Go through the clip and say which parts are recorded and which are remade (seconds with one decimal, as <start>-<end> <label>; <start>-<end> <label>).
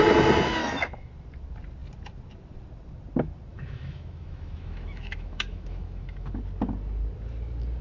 0.0-0.6 recorded; 0.6-1.1 remade; 1.1-3.5 recorded; 3.5-6.4 remade; 6.4-7.8 recorded